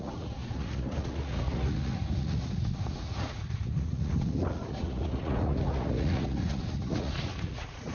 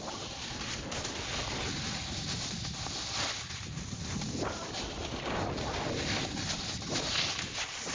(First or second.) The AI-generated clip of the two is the first